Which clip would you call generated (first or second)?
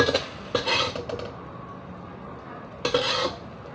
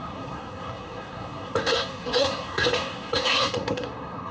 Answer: second